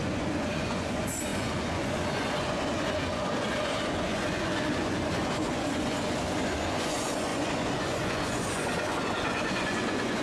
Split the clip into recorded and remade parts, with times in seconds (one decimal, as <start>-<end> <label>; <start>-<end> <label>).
0.0-10.2 remade